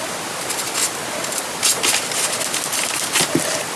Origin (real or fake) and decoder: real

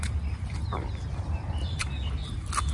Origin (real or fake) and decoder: real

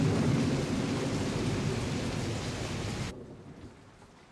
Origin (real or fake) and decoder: real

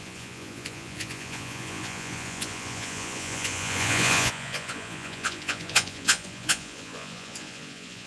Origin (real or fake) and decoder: fake, vocoder, Vocos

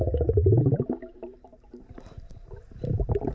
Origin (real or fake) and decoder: fake, vocoder, BigVGAN v2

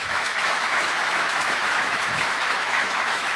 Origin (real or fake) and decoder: fake, autoencoder, DAC-VAE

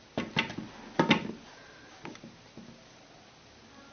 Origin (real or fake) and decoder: real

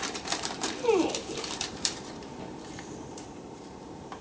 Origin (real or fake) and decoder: fake, vocoder, BigVGAN v2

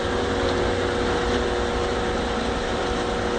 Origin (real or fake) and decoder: real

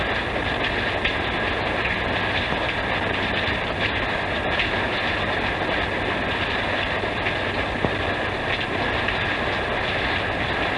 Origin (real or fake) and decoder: real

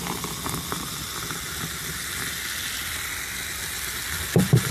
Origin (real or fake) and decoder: real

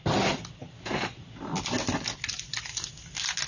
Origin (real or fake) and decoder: real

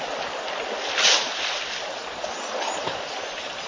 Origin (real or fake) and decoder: real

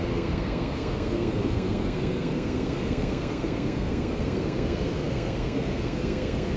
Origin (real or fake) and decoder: fake, codec, SNAC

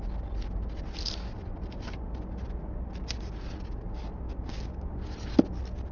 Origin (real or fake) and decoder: real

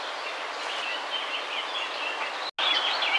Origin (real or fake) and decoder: real